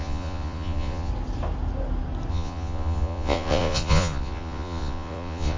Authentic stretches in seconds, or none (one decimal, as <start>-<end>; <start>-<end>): 1.1-2.3